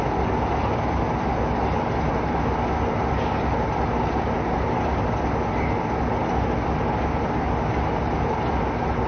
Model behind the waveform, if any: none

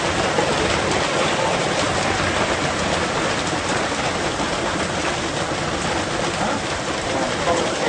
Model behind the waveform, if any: none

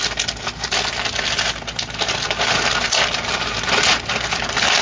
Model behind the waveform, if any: none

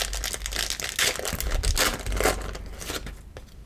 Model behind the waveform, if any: none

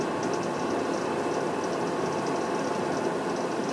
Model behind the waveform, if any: none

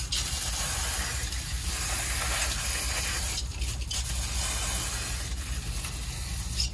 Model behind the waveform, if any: none